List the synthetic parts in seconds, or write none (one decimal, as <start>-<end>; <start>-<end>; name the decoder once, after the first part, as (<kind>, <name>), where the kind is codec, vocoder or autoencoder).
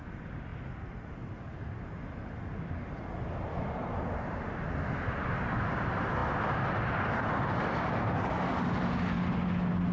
none